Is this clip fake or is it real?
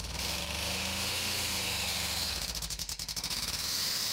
fake